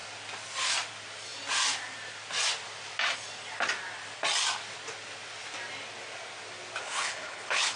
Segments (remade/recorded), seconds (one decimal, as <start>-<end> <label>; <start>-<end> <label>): 0.0-6.8 recorded; 6.8-7.8 remade